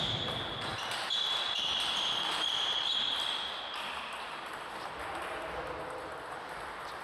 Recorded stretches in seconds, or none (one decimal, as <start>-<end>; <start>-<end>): 0.7-1.3